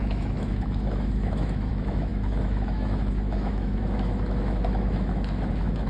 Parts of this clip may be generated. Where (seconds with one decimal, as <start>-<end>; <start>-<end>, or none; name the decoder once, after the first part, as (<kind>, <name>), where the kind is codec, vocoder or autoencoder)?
0.0-5.9 (autoencoder, DAC-VAE)

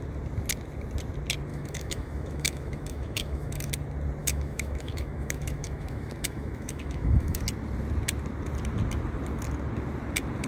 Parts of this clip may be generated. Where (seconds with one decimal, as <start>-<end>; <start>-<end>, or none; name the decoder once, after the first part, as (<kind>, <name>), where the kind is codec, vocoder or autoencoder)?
1.5-3.7 (autoencoder, DAC-VAE); 4.2-7.4